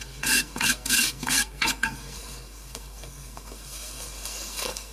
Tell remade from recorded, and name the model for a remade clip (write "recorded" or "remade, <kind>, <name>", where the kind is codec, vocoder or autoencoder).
remade, codec, SNAC